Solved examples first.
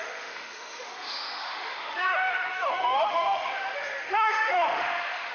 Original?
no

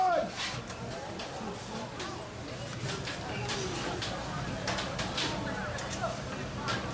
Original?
yes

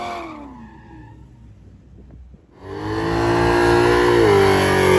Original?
yes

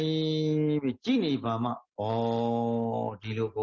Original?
yes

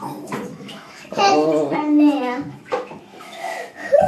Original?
no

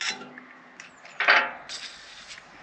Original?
yes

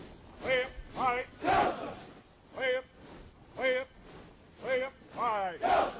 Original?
yes